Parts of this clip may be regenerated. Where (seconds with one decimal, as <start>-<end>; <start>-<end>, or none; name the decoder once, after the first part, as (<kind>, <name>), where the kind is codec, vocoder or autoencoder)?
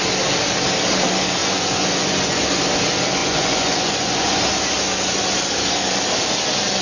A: 1.4-2.4 (vocoder, Vocos); 3.2-4.4